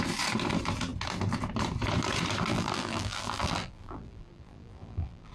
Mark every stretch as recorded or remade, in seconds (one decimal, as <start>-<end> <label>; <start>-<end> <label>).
0.0-2.5 recorded; 2.5-5.3 remade